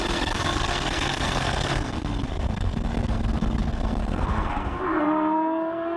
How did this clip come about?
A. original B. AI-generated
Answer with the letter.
B